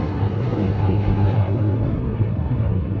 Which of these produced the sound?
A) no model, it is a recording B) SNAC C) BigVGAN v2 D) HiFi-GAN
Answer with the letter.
B